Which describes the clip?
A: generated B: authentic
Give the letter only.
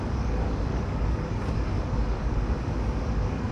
A